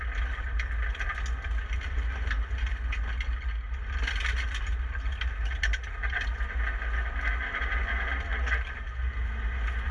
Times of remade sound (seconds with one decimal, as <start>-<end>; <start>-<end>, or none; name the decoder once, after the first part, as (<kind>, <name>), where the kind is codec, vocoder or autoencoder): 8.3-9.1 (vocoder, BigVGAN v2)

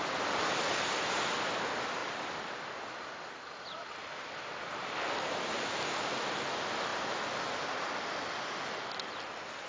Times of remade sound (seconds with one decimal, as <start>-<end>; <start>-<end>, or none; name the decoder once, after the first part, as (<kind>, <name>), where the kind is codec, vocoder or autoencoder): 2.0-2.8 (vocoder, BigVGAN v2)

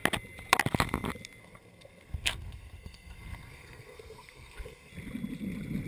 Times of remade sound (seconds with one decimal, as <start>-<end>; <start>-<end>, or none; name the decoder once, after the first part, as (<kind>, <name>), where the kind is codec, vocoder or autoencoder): 1.4-4.9 (codec, SNAC)

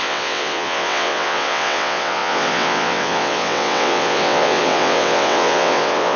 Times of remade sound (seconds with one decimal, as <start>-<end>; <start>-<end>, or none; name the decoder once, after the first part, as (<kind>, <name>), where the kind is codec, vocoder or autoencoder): 0.0-6.2 (vocoder, WaveNeXt)

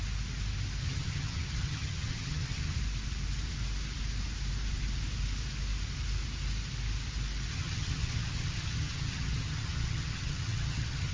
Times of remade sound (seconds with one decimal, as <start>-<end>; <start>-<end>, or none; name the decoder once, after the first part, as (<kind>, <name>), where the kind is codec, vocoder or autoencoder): 0.8-2.8 (vocoder, HiFi-GAN); 7.5-11.1